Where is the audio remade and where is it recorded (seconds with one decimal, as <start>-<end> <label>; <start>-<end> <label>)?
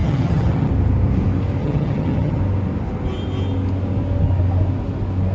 0.0-0.7 remade; 0.7-1.6 recorded; 1.6-2.4 remade; 2.4-5.3 recorded